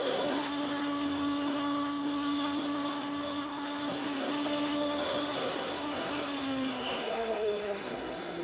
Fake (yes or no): yes